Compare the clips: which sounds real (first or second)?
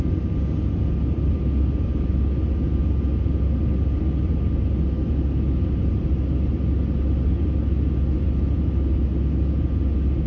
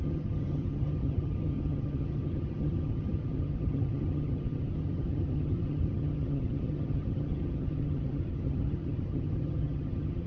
first